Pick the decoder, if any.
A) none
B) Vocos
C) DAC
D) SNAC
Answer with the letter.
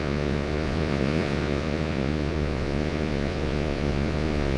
B